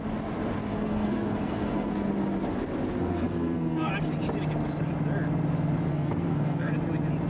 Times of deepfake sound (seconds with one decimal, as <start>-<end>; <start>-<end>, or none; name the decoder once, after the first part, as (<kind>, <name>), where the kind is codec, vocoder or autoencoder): 0.7-2.1 (codec, SNAC); 3.0-3.9; 5.9-6.7